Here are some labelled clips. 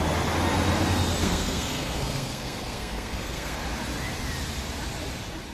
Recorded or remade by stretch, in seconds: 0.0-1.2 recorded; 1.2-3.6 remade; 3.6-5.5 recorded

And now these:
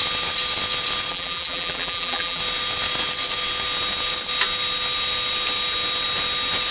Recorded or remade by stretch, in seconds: 0.0-1.1 recorded; 1.1-2.4 remade; 2.4-6.7 recorded

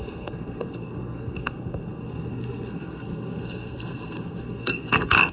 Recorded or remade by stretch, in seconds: 0.0-5.3 remade

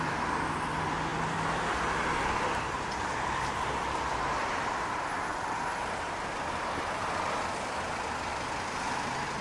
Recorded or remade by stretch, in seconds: 0.0-9.4 recorded

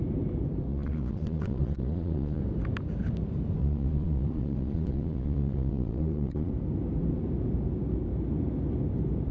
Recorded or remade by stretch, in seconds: 0.0-0.7 recorded; 0.7-2.4 remade; 2.4-3.6 recorded; 3.6-6.5 remade; 6.5-9.3 recorded

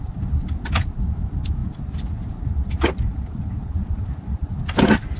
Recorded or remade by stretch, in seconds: 0.0-5.2 recorded

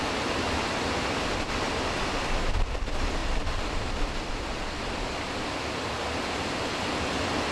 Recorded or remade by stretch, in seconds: 0.0-7.5 recorded